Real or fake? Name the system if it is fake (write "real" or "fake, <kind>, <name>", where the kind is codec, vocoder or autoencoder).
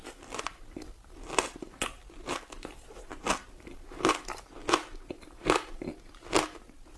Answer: real